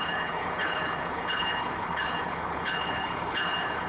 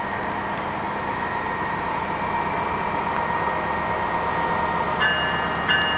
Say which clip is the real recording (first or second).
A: second